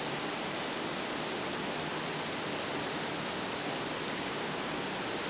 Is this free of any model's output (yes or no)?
yes